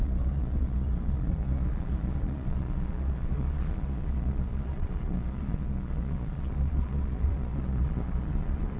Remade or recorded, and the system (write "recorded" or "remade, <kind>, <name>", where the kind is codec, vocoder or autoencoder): remade, vocoder, Vocos